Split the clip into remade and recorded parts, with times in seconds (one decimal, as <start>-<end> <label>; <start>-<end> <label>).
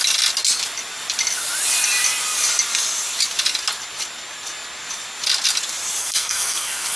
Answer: 0.0-6.0 recorded; 6.0-7.0 remade